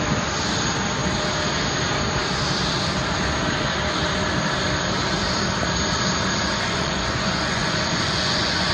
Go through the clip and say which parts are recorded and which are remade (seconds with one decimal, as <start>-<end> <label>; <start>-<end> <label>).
0.0-6.4 recorded; 6.4-8.7 remade